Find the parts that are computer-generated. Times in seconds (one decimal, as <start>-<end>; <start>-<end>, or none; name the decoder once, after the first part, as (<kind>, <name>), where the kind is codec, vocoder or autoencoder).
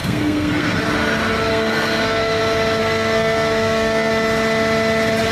0.0-0.8 (codec, SNAC); 1.5-2.4; 2.8-4.1